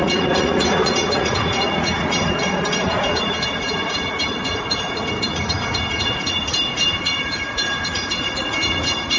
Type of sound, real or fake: fake